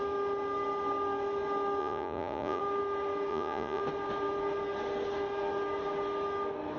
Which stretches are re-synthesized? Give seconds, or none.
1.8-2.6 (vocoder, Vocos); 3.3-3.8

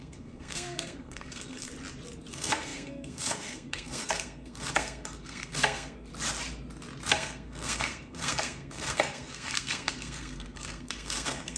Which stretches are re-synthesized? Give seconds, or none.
0.0-1.7 (codec, SNAC); 2.3-6.1; 7.1-11.6

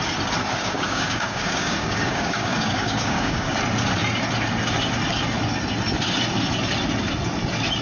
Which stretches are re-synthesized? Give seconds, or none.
0.6-3.6 (codec, DAC)

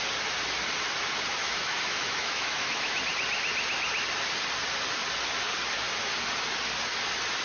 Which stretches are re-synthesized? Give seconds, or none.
1.4-3.0 (autoencoder, DAC-VAE)

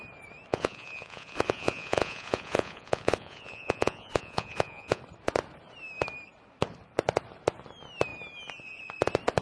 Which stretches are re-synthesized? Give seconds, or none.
0.5-5.0 (vocoder, Vocos)

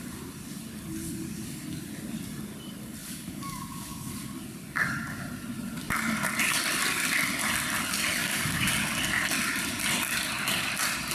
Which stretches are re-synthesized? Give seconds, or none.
3.0-4.2 (codec, DAC); 8.2-8.7

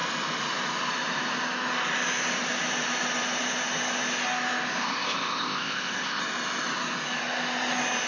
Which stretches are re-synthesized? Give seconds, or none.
4.8-6.2 (codec, ZipCodec)